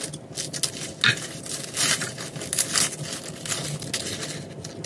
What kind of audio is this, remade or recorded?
recorded